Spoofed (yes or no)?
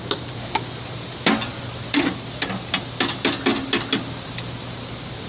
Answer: no